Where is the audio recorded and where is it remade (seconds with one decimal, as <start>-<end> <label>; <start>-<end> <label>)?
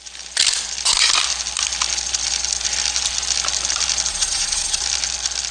0.0-4.1 recorded; 4.1-4.8 remade; 4.8-5.5 recorded